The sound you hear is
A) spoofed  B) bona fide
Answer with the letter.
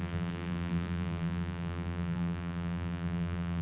A